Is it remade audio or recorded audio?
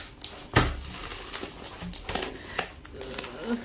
recorded